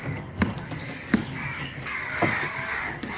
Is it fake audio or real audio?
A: fake